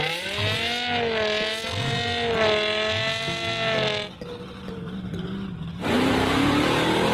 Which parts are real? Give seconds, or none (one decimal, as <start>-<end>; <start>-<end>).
0.4-4.7